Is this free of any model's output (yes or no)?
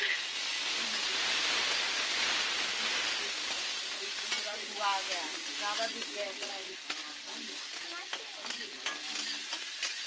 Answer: yes